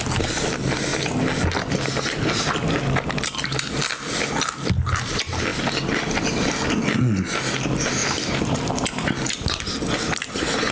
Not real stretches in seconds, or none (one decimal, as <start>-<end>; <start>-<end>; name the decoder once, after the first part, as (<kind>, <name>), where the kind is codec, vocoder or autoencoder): 8.0-8.7 (vocoder, BigVGAN v2)